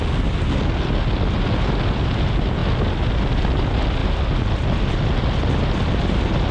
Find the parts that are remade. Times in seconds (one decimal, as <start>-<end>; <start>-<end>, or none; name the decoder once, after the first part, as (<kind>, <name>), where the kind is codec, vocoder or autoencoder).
none